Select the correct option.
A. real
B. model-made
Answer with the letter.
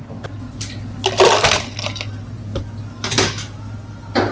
A